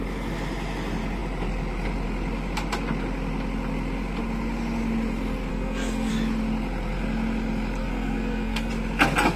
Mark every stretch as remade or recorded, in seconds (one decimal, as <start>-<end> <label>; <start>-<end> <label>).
0.0-5.5 recorded; 5.5-6.1 remade; 6.1-7.8 recorded; 7.8-8.7 remade; 8.7-9.4 recorded